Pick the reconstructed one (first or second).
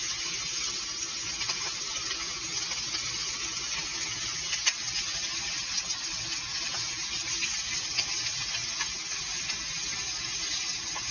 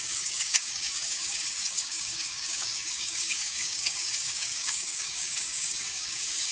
second